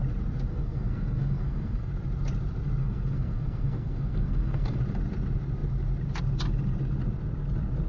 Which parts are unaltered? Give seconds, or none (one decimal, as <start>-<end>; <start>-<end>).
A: 0.0-0.5; 1.9-2.8; 4.8-7.9